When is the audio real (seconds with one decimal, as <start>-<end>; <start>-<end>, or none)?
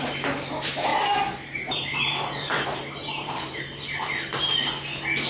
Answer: 0.0-0.9; 4.1-5.3